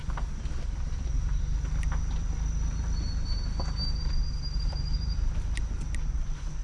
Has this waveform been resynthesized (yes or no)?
yes